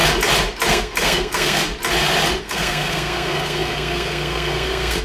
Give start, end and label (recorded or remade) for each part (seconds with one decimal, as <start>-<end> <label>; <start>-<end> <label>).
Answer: 0.0-0.7 recorded; 0.7-1.7 remade; 1.7-2.4 recorded; 2.4-5.0 remade